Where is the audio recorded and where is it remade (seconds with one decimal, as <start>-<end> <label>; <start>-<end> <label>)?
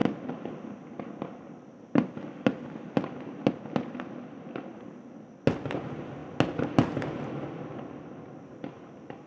0.0-9.3 recorded